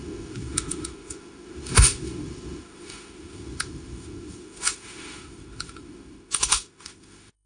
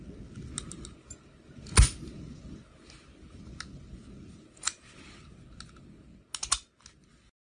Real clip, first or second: second